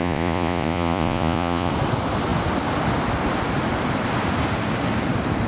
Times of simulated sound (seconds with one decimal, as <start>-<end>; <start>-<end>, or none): 0.0-1.7